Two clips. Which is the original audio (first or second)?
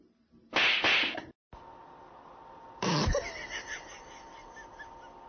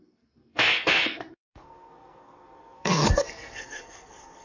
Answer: first